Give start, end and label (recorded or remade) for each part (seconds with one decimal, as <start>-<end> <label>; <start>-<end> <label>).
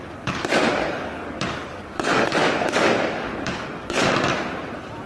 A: 0.0-4.3 remade; 4.3-5.1 recorded